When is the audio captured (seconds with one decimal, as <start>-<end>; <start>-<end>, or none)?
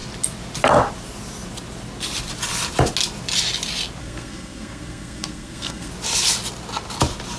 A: 0.0-4.0; 5.9-7.4